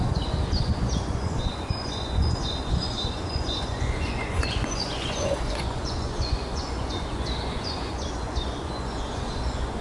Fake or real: fake